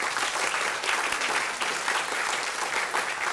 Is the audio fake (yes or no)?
no